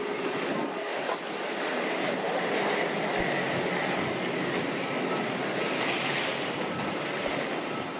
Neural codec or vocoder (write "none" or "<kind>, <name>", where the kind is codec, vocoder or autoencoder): none